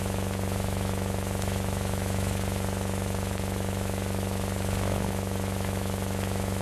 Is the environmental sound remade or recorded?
remade